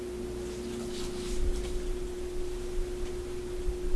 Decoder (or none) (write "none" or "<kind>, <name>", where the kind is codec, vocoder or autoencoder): none